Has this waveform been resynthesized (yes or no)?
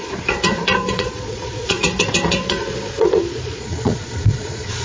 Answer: yes